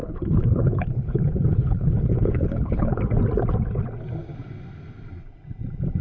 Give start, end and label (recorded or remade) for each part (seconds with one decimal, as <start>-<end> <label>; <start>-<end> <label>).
0.0-3.0 remade; 3.0-6.0 recorded